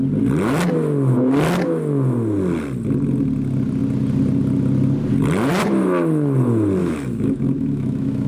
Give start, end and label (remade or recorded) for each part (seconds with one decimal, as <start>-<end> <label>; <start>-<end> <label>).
0.0-6.8 recorded; 6.8-8.3 remade